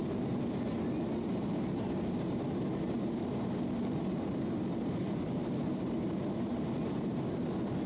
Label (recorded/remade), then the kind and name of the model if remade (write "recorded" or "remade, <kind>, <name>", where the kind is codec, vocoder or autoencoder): recorded